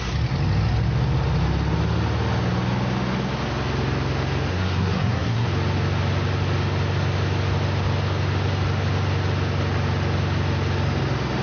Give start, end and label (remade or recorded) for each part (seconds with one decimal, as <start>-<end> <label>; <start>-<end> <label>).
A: 0.0-4.5 recorded; 4.5-5.5 remade; 5.5-11.4 recorded